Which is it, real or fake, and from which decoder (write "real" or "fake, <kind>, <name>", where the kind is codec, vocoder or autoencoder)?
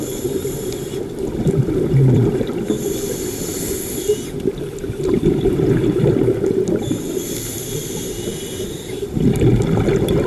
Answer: fake, vocoder, BigVGAN v2